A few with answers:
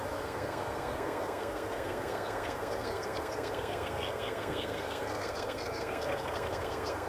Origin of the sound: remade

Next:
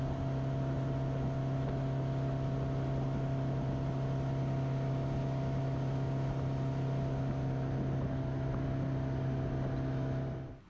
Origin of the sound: recorded